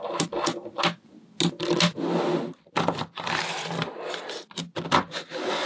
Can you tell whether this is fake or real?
real